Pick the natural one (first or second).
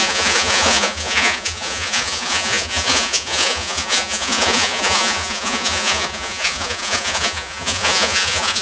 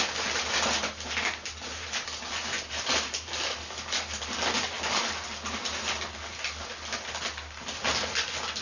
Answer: second